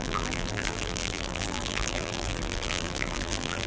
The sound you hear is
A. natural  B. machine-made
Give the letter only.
B